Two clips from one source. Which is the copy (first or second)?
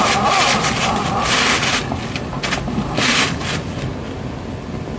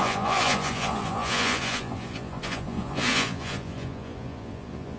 second